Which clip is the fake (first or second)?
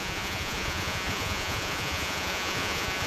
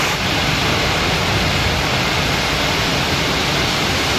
first